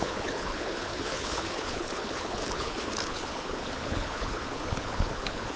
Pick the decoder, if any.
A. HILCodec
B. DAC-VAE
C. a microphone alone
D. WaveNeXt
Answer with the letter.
A